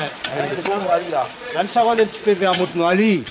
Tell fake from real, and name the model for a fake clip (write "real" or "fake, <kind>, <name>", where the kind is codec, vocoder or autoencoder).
fake, vocoder, Vocos